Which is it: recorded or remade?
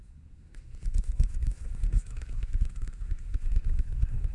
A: remade